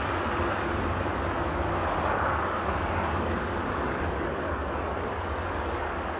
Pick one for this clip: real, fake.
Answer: fake